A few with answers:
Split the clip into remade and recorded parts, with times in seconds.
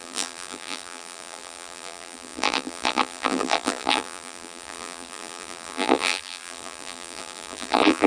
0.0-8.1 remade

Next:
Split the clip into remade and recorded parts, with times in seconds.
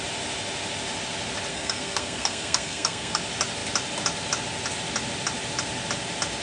0.0-1.5 recorded; 1.5-3.2 remade; 3.2-6.4 recorded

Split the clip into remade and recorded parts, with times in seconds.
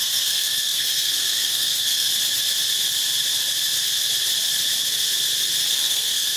0.0-2.1 remade; 2.1-5.7 recorded; 5.7-6.4 remade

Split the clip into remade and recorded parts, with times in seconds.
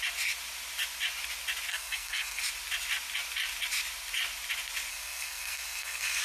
0.0-1.7 recorded; 1.7-2.4 remade; 2.4-4.9 recorded; 4.9-6.2 remade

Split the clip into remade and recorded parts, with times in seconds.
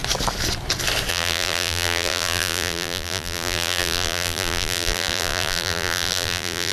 0.0-1.1 recorded; 1.1-6.7 remade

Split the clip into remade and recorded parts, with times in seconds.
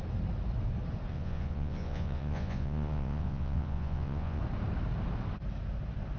0.0-1.1 recorded; 1.1-4.4 remade; 4.4-6.2 recorded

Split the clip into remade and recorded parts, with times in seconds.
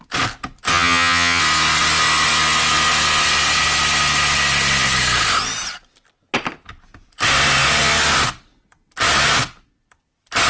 0.0-0.7 recorded; 0.7-1.4 remade; 1.4-10.5 recorded